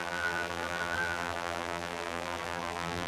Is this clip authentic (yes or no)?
no